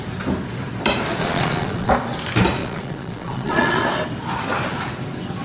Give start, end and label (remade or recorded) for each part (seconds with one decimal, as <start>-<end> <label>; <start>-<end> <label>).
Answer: 0.0-1.2 recorded; 1.2-1.9 remade; 1.9-2.6 recorded; 2.6-3.8 remade; 3.8-5.4 recorded